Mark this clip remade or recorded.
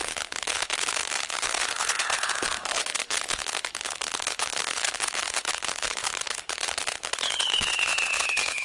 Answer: remade